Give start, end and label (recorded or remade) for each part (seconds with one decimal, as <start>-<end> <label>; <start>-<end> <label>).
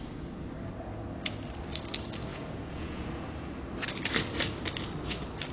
0.0-2.3 recorded; 2.3-3.1 remade; 3.1-5.5 recorded